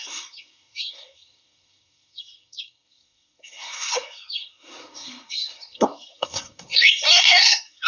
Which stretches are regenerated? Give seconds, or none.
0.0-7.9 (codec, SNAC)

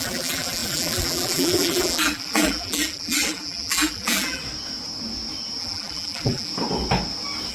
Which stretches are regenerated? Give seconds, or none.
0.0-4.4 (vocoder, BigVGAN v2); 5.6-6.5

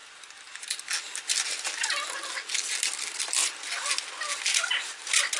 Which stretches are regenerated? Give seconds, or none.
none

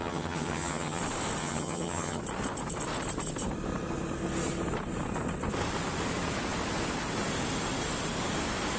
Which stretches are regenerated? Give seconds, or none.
0.0-1.0 (vocoder, HiFi-GAN); 1.4-2.2